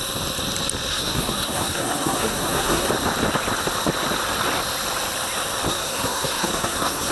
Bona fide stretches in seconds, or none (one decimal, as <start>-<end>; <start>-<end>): 0.0-0.9; 2.9-5.7